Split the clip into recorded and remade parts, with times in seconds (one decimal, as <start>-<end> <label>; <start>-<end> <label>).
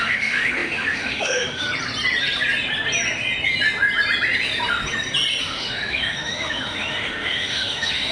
0.0-1.7 remade; 1.7-5.4 recorded; 5.4-8.1 remade